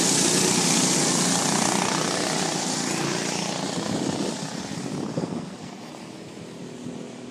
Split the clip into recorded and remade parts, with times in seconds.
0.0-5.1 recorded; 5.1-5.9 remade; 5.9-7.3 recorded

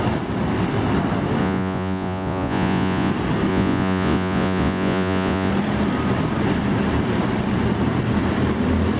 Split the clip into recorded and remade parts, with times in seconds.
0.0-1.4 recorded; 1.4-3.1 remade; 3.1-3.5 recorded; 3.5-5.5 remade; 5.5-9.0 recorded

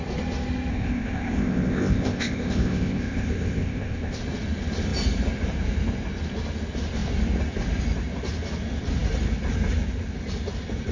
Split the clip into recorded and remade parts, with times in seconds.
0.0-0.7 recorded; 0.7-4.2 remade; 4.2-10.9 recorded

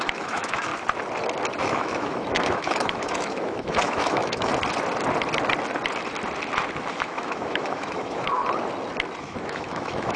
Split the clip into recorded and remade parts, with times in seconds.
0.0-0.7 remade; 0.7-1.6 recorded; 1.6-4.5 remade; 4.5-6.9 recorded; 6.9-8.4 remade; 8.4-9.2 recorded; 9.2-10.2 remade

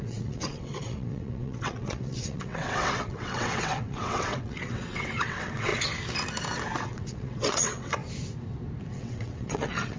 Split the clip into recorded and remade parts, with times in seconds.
0.0-5.7 remade; 5.7-6.8 recorded; 6.8-8.0 remade; 8.0-8.9 recorded; 8.9-10.0 remade